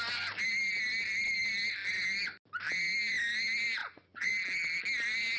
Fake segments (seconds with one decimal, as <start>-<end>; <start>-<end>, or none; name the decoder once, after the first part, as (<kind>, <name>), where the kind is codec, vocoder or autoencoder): 3.8-4.3 (vocoder, Vocos)

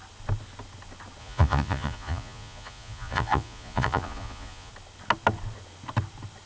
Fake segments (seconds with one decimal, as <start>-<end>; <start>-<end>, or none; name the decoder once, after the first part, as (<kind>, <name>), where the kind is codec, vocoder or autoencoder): 1.2-4.7 (vocoder, Vocos)